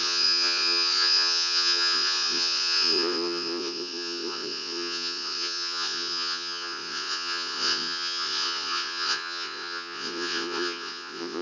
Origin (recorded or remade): remade